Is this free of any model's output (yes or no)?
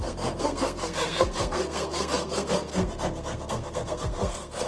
no